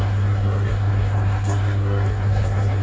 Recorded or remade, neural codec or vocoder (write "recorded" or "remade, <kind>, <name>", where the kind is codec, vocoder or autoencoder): remade, codec, SNAC